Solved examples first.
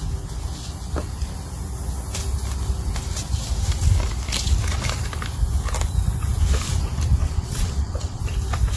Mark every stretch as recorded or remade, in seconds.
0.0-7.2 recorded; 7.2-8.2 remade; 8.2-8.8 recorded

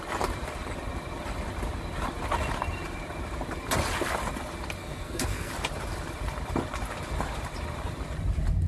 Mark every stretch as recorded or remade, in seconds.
0.0-4.8 recorded; 4.8-5.5 remade; 5.5-8.7 recorded

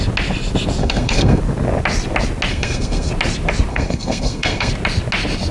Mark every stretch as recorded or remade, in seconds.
0.0-0.8 recorded; 0.8-1.4 remade; 1.4-2.5 recorded; 2.5-3.1 remade; 3.1-3.7 recorded; 3.7-4.7 remade; 4.7-5.5 recorded